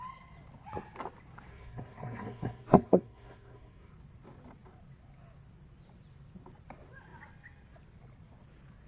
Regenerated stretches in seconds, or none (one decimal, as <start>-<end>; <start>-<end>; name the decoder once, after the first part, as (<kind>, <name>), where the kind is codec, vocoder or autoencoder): 1.5-3.9 (codec, SNAC)